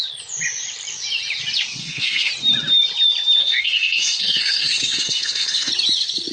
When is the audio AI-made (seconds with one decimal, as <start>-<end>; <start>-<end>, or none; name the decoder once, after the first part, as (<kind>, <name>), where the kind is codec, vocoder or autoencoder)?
1.8-2.3 (codec, SNAC); 3.4-5.7